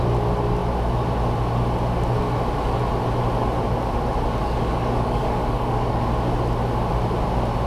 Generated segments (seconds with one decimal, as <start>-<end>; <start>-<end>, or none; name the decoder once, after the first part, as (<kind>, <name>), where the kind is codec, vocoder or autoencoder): 4.4-6.0 (codec, DAC)